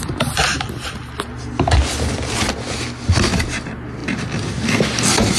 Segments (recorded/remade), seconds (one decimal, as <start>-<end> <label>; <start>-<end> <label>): 0.0-5.4 recorded